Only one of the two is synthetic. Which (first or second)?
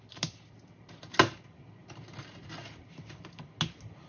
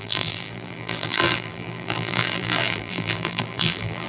second